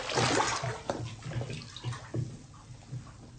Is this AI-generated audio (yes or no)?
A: no